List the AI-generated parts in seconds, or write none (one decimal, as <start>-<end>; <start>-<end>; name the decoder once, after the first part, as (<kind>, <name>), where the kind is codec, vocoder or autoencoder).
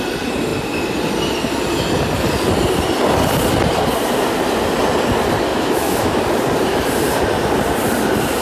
5.5-6.2 (autoencoder, DAC-VAE)